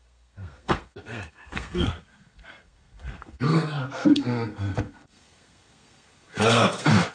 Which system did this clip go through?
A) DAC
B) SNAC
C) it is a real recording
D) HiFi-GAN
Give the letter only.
B